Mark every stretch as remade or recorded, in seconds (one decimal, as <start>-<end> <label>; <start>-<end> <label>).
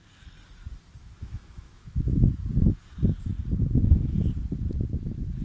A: 0.0-1.0 recorded; 1.0-2.3 remade; 2.3-5.4 recorded